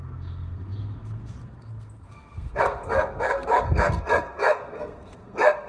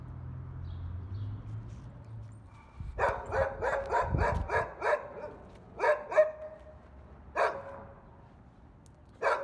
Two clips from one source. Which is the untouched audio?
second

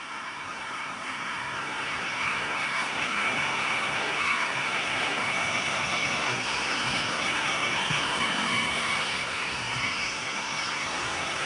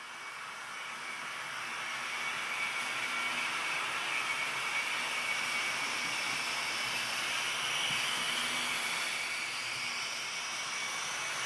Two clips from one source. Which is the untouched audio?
second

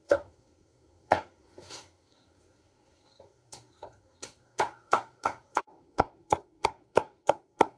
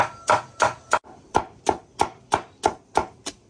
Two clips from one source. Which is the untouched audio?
second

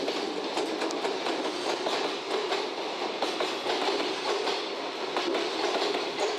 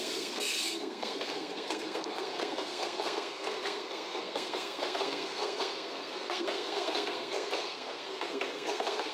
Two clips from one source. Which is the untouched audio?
first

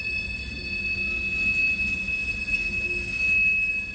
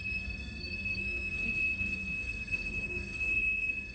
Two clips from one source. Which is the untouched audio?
first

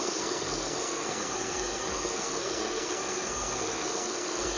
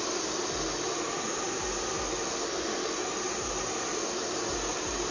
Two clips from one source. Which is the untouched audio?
second